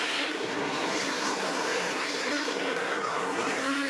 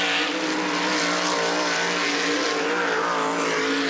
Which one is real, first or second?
second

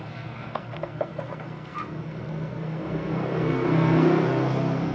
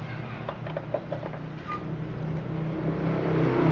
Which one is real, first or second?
second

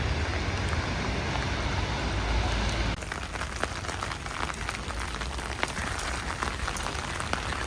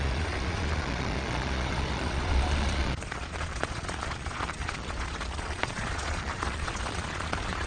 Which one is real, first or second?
first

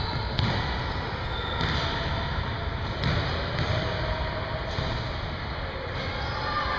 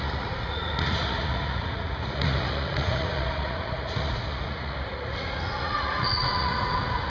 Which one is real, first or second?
first